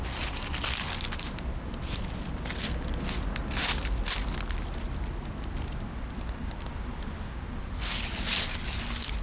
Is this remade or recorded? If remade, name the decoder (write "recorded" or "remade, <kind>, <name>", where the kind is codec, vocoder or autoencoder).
recorded